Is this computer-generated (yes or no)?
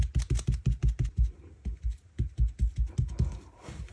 no